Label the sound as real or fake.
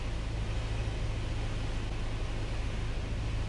real